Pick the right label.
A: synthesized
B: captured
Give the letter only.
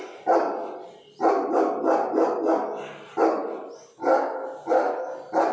B